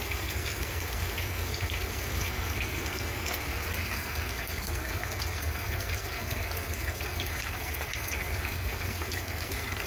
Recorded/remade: remade